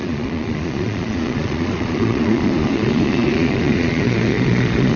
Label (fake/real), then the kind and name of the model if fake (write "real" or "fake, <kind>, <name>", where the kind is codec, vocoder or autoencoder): fake, vocoder, Vocos